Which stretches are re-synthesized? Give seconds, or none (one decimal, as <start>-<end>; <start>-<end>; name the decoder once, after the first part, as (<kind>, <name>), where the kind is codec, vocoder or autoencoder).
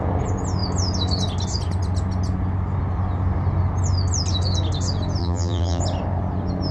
5.2-5.8 (vocoder, BigVGAN v2)